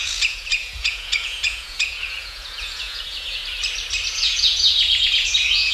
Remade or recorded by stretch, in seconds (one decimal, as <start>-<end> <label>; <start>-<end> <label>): 0.0-3.4 remade; 3.4-4.1 recorded; 4.1-5.7 remade